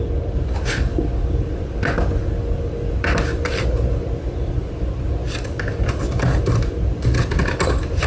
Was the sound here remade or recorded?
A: recorded